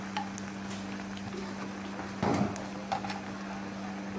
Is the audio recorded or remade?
recorded